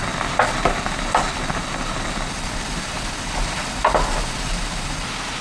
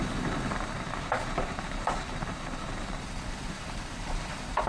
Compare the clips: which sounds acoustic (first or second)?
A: first